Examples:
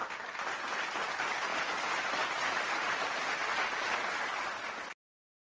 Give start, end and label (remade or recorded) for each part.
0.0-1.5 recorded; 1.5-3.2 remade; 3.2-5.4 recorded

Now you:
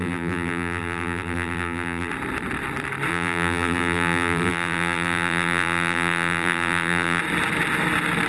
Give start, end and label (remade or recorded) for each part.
0.0-2.1 remade; 2.1-3.1 recorded; 3.1-7.2 remade; 7.2-8.3 recorded

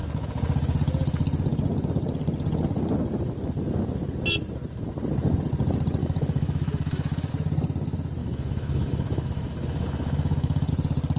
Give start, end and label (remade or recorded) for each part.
0.0-6.0 recorded; 6.0-7.3 remade; 7.3-8.2 recorded; 8.2-10.7 remade; 10.7-11.2 recorded

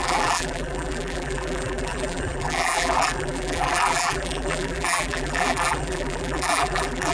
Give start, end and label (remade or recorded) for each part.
0.0-7.1 remade